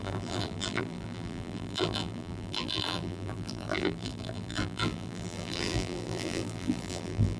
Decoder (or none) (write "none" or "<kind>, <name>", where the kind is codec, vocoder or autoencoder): vocoder, BigVGAN v2